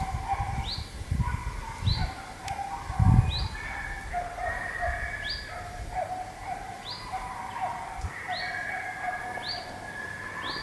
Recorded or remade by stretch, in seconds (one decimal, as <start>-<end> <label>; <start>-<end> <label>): 0.0-1.4 recorded; 1.4-2.4 remade; 2.4-6.4 recorded; 6.4-7.4 remade; 7.4-10.6 recorded